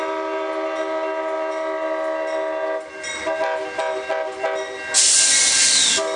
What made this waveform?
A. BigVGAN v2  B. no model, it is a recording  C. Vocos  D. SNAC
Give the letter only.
B